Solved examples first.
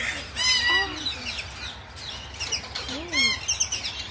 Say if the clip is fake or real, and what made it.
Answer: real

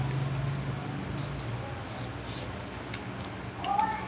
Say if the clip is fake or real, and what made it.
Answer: real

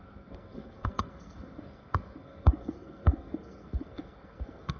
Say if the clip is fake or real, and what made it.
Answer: fake, codec, SNAC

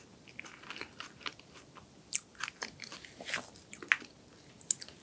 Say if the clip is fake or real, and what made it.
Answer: real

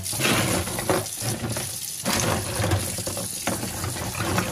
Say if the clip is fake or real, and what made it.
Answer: real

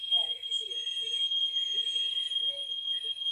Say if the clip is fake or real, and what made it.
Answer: fake, codec, SNAC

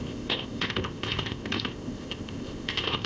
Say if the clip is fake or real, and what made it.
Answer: fake, codec, ZipCodec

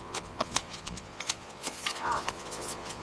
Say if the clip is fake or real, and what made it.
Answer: fake, vocoder, Vocos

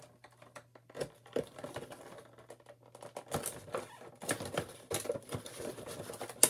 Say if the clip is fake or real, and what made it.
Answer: real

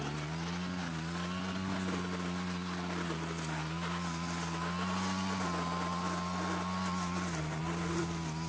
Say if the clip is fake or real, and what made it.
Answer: real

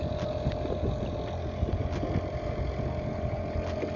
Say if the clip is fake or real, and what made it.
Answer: real